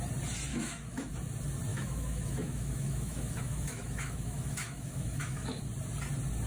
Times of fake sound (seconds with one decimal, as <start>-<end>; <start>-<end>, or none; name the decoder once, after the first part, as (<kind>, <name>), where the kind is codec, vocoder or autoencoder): 0.5-1.1 (autoencoder, DAC-VAE); 1.7-5.6